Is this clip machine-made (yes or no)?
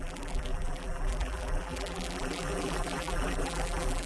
yes